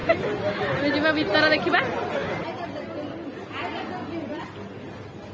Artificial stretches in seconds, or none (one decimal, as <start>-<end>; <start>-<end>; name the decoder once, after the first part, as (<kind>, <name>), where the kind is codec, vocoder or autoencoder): none